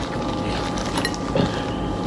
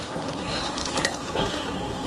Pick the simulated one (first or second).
second